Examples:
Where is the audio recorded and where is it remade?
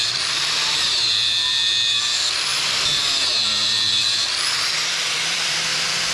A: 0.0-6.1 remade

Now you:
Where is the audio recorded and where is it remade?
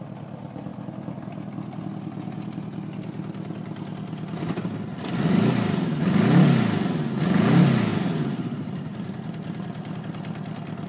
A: 0.0-10.9 recorded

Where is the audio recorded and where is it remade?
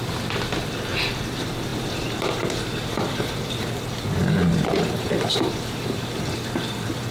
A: 0.0-7.1 remade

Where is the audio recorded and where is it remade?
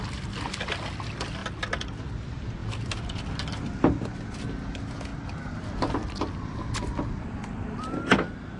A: 0.0-1.4 recorded; 1.4-2.1 remade; 2.1-2.6 recorded; 2.6-3.4 remade; 3.4-5.1 recorded; 5.1-6.4 remade; 6.4-8.6 recorded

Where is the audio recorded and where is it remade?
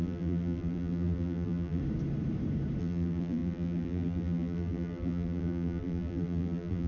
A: 0.0-1.8 remade; 1.8-2.8 recorded; 2.8-6.9 remade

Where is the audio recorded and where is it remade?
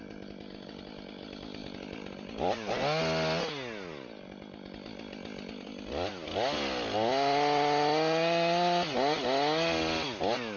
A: 0.0-1.6 recorded; 1.6-2.7 remade; 2.7-10.6 recorded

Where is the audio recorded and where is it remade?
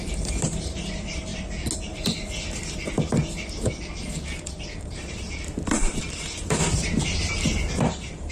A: 0.0-1.3 remade; 1.3-4.8 recorded; 4.8-6.6 remade; 6.6-7.8 recorded; 7.8-8.3 remade